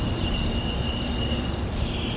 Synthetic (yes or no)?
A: yes